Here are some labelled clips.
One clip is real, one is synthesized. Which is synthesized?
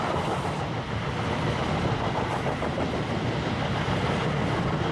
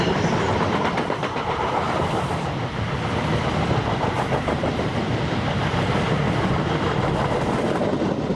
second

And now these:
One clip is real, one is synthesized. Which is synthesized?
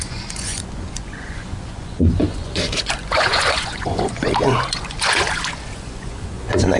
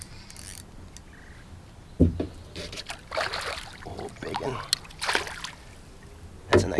first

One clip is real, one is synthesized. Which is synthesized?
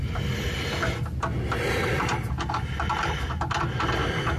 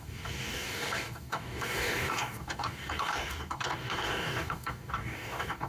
second